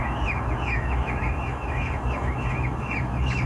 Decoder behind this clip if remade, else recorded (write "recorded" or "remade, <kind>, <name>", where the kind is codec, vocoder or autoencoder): remade, autoencoder, DAC-VAE